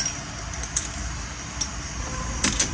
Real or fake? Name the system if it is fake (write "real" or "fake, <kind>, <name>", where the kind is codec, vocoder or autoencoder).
real